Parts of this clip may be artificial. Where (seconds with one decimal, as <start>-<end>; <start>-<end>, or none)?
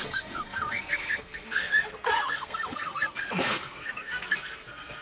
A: 0.0-5.0